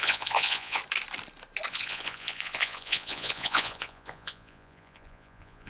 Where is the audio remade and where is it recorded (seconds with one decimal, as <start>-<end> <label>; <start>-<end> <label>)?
0.0-0.8 remade; 0.8-1.7 recorded; 1.7-5.7 remade